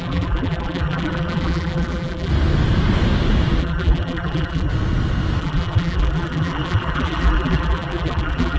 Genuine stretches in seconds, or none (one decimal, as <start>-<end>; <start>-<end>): 2.3-3.6; 4.7-5.4